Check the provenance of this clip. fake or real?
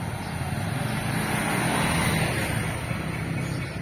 real